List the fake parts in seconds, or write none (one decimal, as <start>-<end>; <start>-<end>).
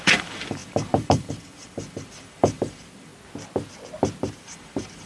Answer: 0.0-3.1; 4.4-5.1